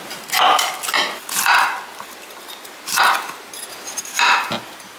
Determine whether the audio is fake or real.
real